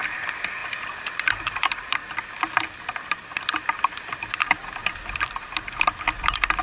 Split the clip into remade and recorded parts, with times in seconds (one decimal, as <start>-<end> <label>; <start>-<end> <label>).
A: 0.0-6.6 remade